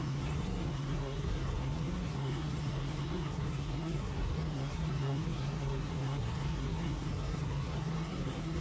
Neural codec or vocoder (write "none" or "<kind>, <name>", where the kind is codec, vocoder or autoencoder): codec, SNAC